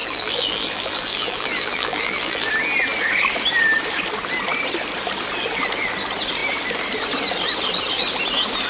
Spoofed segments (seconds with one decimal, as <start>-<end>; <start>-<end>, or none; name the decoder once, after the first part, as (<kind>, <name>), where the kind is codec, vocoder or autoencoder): 0.0-2.5 (vocoder, BigVGAN v2)